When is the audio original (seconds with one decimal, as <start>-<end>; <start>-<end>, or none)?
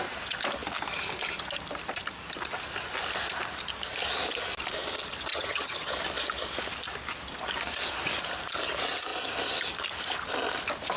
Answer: 0.0-5.3; 5.9-11.0